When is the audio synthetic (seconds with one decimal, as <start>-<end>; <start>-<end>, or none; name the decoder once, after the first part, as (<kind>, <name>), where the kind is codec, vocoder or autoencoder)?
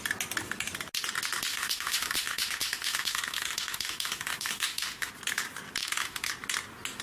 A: 1.5-5.1 (autoencoder, DAC-VAE); 5.8-6.3